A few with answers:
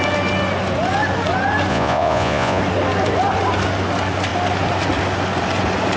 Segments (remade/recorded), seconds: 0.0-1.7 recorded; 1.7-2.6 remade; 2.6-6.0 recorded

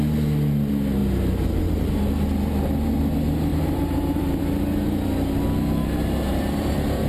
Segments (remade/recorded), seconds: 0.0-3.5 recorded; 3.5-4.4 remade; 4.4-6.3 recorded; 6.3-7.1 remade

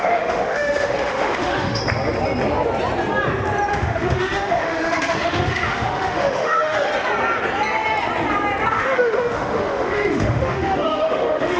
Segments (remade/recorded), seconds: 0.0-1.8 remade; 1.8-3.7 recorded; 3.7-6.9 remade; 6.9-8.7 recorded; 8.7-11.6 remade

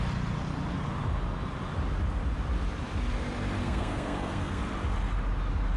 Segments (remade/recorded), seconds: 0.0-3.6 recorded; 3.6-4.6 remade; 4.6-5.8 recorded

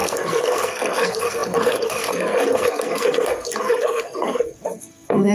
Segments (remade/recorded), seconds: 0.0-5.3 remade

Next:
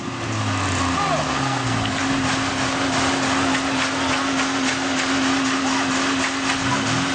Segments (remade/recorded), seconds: 0.0-1.3 recorded; 1.3-2.0 remade; 2.0-7.1 recorded